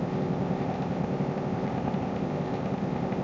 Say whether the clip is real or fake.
fake